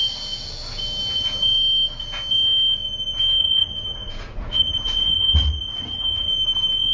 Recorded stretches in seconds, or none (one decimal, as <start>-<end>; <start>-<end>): 0.0-3.4; 6.3-6.9